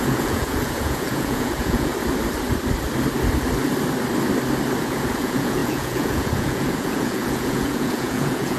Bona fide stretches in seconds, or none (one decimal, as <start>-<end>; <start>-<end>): 1.9-4.8